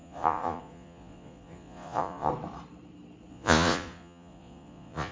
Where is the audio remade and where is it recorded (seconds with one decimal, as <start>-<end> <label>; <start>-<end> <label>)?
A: 0.0-2.3 remade; 2.3-3.3 recorded; 3.3-5.1 remade